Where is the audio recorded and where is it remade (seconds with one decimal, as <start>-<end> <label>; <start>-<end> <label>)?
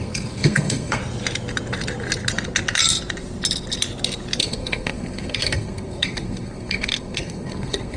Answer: 0.0-1.0 remade; 1.0-4.4 recorded; 4.4-8.0 remade